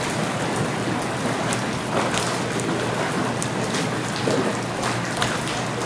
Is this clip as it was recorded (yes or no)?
yes